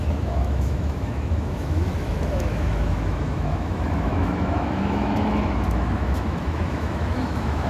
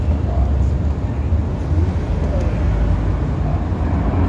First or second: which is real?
second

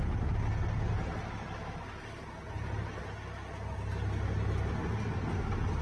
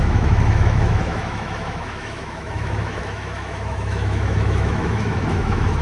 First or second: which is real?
first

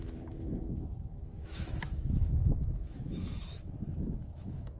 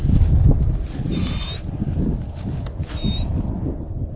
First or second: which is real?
second